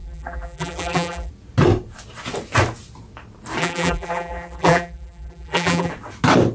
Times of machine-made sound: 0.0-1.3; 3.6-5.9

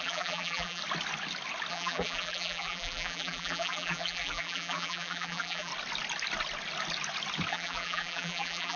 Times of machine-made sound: 0.0-0.8; 1.7-5.7; 7.5-8.8

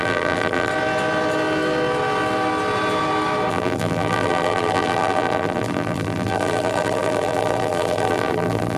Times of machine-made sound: 0.0-0.7; 3.5-8.8